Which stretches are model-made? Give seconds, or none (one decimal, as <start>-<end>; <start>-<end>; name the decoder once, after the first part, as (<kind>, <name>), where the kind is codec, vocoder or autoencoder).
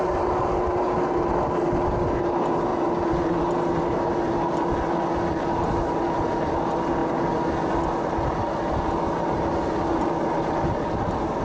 none